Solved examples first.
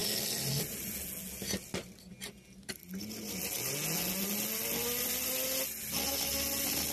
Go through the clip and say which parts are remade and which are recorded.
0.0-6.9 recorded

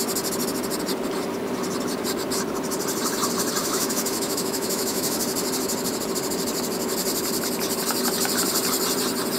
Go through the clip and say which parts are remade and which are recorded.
0.0-3.6 recorded; 3.6-5.2 remade; 5.2-9.4 recorded

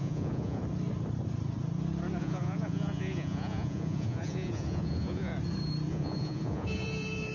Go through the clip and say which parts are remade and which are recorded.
0.0-0.6 remade; 0.6-2.2 recorded; 2.2-5.3 remade; 5.3-5.9 recorded; 5.9-7.3 remade

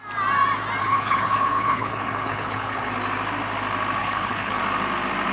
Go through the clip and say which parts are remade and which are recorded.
0.0-0.8 recorded; 0.8-2.9 remade; 2.9-4.0 recorded; 4.0-4.6 remade; 4.6-5.3 recorded

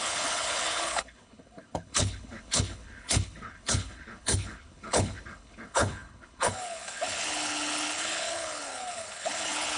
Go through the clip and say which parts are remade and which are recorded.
0.0-9.8 remade

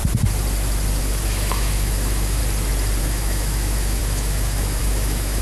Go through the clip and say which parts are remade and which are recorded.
0.0-1.0 recorded; 1.0-2.4 remade; 2.4-3.0 recorded; 3.0-5.4 remade

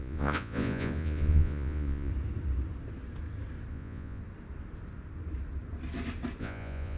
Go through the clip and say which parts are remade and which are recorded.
0.0-2.1 remade; 2.1-3.7 recorded; 3.7-4.2 remade; 4.2-6.4 recorded; 6.4-7.0 remade

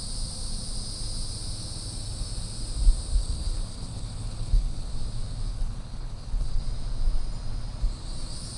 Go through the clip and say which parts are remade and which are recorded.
0.0-3.2 recorded; 3.2-4.9 remade; 4.9-5.5 recorded; 5.5-6.6 remade; 6.6-8.6 recorded